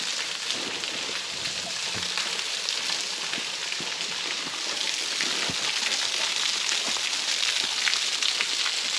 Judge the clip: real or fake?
real